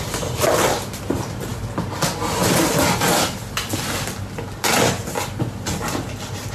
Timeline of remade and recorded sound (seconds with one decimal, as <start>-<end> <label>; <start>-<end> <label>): 0.0-6.5 recorded